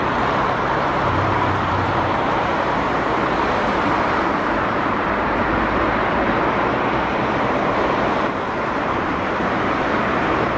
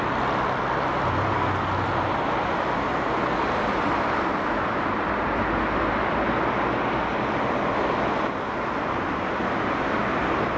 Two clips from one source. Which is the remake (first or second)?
first